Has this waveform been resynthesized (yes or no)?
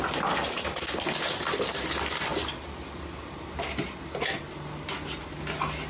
no